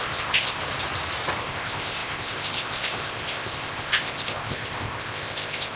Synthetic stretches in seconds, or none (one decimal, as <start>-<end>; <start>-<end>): 0.0-0.6; 1.4-5.8